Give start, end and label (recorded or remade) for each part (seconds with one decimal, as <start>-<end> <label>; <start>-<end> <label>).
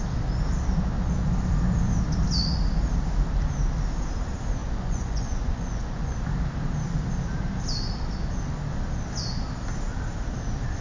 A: 0.0-4.6 recorded; 4.6-6.2 remade; 6.2-10.8 recorded